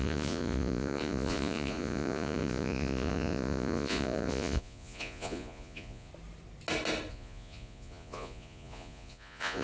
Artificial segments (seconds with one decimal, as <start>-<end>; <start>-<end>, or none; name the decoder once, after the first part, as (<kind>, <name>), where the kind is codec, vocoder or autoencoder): 0.0-6.1 (vocoder, Vocos); 7.1-9.6